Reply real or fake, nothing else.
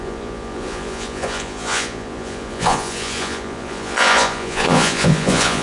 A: fake